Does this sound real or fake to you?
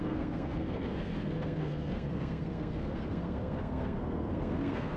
fake